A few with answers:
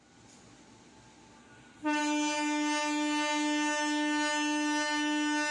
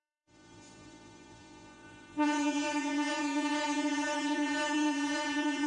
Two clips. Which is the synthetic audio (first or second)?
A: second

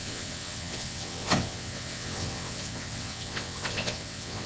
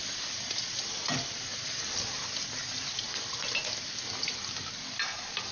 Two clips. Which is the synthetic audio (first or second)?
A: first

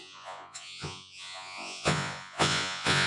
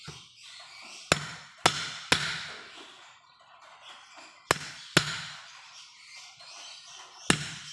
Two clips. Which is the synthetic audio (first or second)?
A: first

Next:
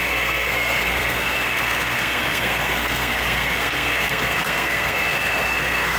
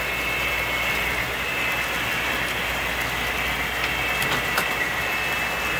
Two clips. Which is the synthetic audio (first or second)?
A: first